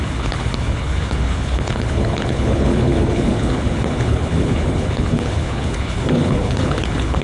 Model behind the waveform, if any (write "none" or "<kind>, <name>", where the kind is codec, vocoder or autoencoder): codec, HILCodec